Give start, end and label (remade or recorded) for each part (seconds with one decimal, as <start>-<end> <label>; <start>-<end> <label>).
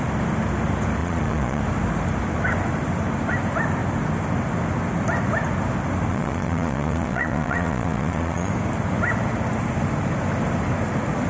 0.0-1.0 recorded; 1.0-1.6 remade; 1.6-6.1 recorded; 6.1-8.5 remade; 8.5-11.3 recorded